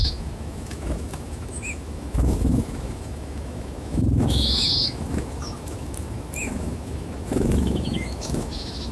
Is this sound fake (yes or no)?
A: yes